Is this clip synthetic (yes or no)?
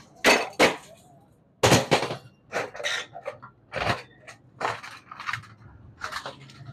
no